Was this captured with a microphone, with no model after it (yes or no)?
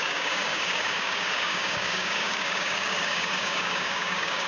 no